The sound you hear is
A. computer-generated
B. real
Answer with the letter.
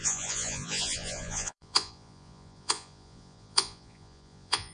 A